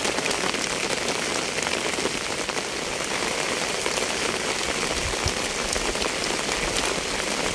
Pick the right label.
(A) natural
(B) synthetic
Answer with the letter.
A